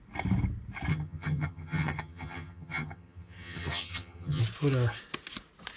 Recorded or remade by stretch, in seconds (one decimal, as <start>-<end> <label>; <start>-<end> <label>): 0.0-0.9 recorded; 0.9-4.4 remade; 4.4-5.8 recorded